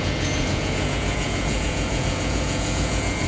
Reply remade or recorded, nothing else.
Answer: remade